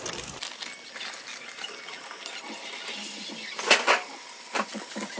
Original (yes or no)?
yes